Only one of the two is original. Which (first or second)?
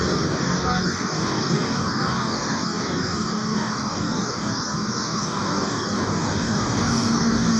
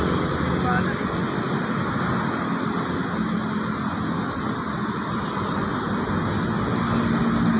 second